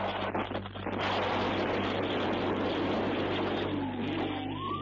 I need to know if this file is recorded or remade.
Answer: recorded